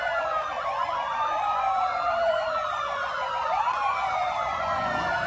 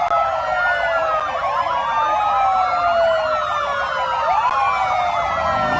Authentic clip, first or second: second